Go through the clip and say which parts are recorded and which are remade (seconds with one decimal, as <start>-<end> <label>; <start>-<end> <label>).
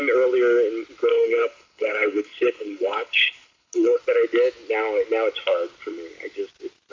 0.0-1.1 recorded; 1.1-4.0 remade; 4.0-6.9 recorded